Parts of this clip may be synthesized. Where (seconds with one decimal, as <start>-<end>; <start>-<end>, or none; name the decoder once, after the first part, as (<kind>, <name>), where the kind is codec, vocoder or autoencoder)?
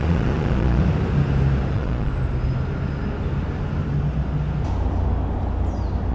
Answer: 0.0-0.8 (vocoder, Vocos); 1.7-2.1